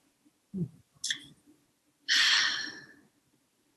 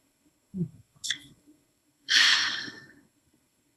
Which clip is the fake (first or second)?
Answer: second